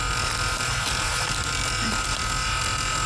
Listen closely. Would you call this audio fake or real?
real